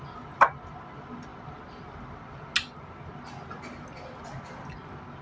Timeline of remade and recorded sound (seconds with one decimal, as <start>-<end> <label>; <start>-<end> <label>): 0.0-5.2 recorded